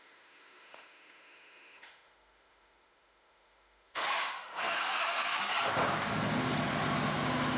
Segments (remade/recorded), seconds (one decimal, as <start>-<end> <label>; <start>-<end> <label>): 0.0-5.4 remade; 5.4-7.6 recorded